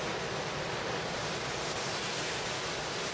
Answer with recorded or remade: recorded